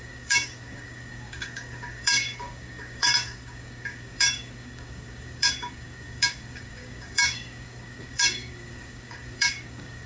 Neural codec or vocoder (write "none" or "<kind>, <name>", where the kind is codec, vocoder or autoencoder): codec, DAC